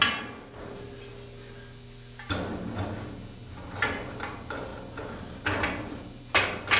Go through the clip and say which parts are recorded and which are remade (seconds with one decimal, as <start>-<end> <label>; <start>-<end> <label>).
0.0-6.8 recorded